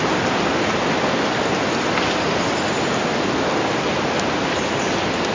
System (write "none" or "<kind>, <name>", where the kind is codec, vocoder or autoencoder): none